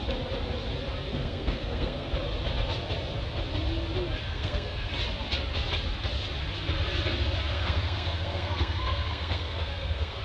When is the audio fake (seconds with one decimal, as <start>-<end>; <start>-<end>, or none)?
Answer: 1.1-2.1; 4.2-4.9; 7.5-10.2